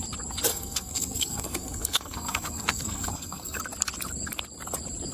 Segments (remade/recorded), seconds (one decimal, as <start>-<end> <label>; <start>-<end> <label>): 0.0-0.5 recorded; 0.5-3.6 remade; 3.6-5.1 recorded